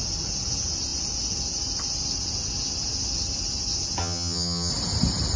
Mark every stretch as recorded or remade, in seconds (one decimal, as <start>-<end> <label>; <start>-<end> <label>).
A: 0.0-4.0 recorded; 4.0-4.7 remade; 4.7-5.4 recorded